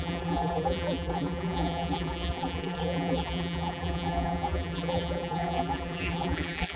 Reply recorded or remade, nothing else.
remade